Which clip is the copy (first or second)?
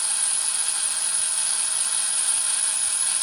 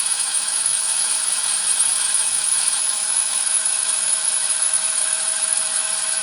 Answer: second